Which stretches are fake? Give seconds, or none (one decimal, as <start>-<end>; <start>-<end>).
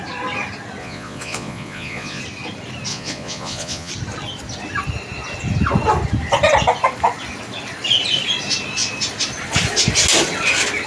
0.8-2.2; 2.9-3.9